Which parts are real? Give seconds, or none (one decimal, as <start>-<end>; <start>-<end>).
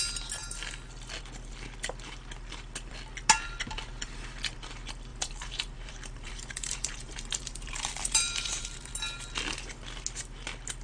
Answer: 0.0-5.1; 8.9-10.8